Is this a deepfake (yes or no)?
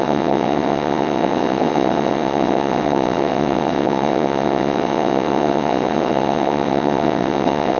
yes